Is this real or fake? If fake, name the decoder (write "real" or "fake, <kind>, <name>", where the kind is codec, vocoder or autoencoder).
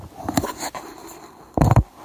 real